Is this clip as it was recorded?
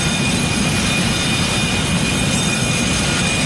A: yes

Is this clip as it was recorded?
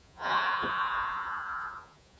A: no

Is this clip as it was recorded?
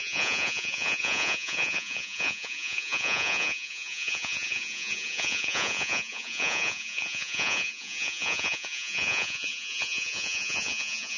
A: no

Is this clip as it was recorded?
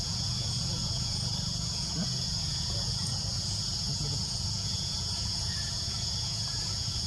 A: no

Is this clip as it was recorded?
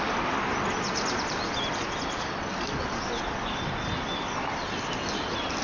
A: yes